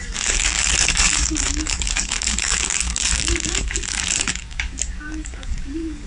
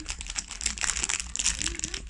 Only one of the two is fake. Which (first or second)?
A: first